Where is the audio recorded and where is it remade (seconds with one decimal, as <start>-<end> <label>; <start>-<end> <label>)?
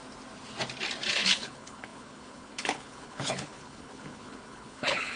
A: 0.0-1.1 recorded; 1.1-5.2 remade